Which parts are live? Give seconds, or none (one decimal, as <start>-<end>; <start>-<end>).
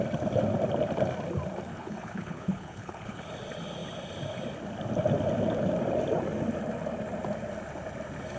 0.0-1.7; 3.2-8.4